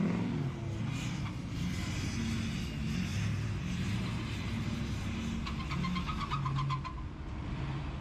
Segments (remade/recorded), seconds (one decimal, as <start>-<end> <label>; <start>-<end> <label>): 0.0-3.1 recorded; 3.1-4.4 remade; 4.4-8.0 recorded